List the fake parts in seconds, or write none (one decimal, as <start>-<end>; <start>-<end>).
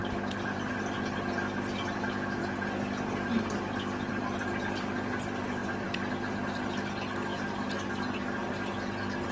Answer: 5.6-6.5